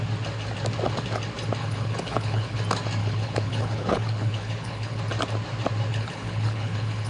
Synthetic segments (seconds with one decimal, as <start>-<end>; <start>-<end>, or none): 1.6-2.6; 3.0-5.0; 5.9-7.1